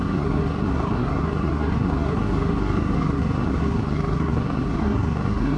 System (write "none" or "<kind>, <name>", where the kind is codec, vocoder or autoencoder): codec, SNAC